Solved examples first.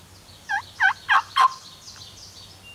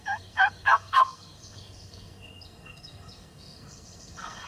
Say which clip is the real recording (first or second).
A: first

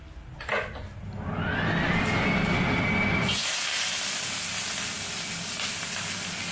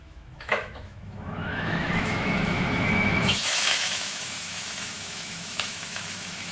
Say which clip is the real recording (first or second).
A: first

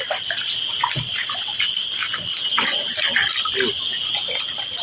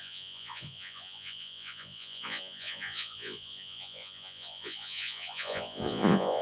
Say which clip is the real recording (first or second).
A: first